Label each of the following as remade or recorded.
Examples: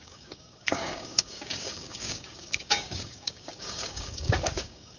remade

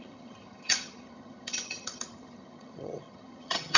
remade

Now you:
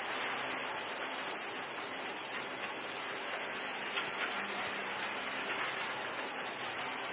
recorded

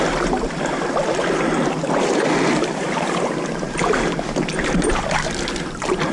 recorded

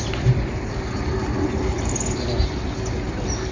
recorded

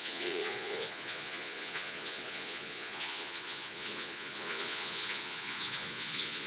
remade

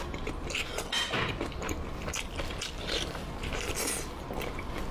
recorded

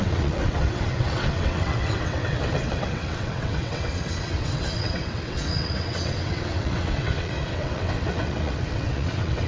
remade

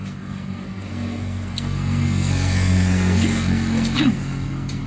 remade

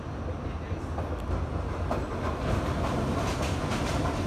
recorded